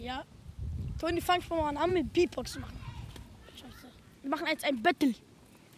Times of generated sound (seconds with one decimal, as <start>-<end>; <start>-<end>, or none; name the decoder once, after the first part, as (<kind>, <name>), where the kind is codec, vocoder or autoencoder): none